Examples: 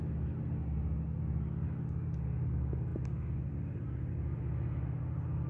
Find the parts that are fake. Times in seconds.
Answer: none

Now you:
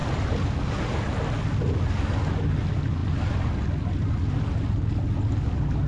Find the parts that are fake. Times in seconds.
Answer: none

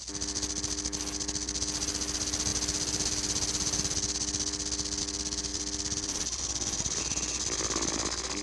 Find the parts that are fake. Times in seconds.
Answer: 5.5-7.0 (vocoder, BigVGAN v2)